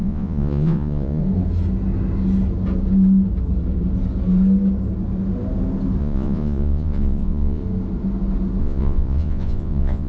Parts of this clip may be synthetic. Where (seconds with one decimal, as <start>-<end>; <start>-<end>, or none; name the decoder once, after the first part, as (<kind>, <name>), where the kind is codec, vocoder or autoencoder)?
0.0-1.2 (vocoder, Vocos); 6.0-7.6; 8.6-10.1